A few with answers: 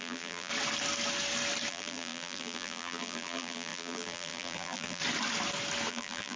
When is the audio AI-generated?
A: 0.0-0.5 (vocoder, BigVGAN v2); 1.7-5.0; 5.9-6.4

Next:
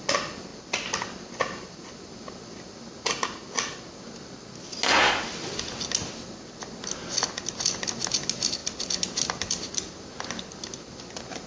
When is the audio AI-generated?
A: none

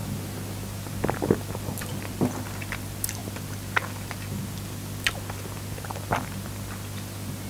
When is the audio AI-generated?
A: none

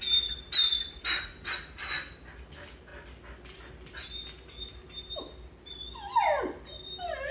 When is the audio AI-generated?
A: none

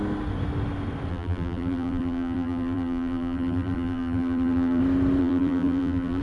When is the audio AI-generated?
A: 1.1-4.8 (vocoder, BigVGAN v2); 5.2-6.2

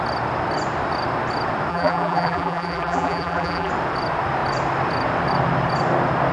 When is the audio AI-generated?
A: 1.7-3.7 (vocoder, BigVGAN v2)